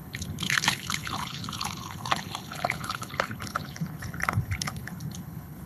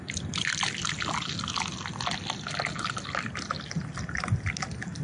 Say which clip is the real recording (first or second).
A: second